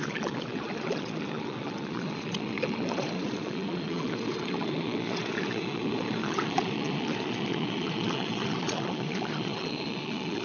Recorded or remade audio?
remade